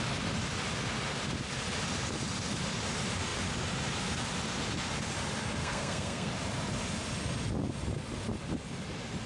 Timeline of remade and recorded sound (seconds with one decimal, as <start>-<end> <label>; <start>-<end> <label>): 0.0-5.6 recorded; 5.6-6.3 remade; 6.3-9.3 recorded